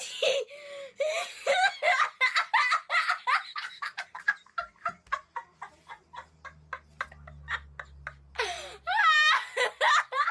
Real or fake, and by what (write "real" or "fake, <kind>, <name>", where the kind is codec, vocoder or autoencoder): real